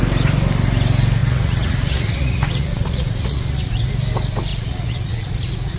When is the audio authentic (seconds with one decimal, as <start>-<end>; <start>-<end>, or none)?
0.0-1.2; 3.9-4.5